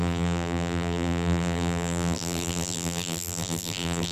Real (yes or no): no